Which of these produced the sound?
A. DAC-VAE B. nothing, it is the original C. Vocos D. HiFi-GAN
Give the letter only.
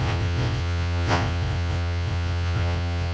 C